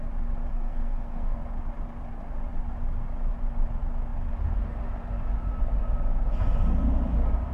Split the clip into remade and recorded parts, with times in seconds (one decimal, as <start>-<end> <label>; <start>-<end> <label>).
0.0-0.5 recorded; 0.5-1.4 remade; 1.4-7.5 recorded